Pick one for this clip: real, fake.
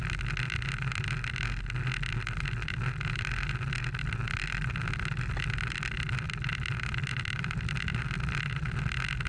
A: real